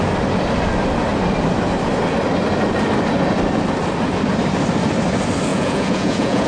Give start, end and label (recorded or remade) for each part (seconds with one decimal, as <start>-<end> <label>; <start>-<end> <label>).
0.0-5.5 recorded; 5.5-6.5 remade